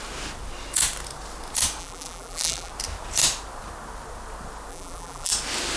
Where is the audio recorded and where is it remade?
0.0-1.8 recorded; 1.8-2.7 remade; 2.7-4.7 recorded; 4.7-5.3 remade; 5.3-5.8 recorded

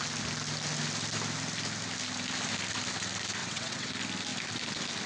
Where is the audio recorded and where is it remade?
0.0-3.4 recorded; 3.4-3.9 remade; 3.9-5.1 recorded

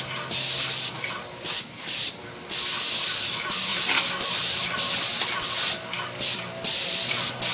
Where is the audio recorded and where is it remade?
0.0-7.5 recorded